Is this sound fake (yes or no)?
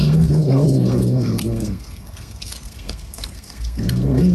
yes